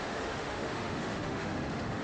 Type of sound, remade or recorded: remade